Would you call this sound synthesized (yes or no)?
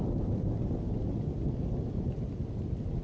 no